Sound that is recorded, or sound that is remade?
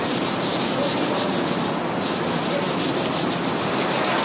recorded